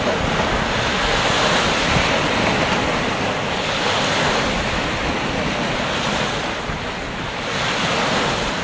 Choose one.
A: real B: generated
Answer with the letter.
A